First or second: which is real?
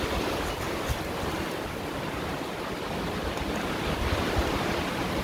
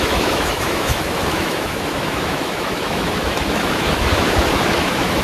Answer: first